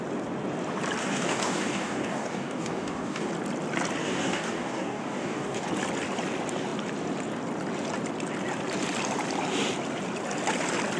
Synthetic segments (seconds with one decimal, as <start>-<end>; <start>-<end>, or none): 1.0-3.3; 4.0-5.7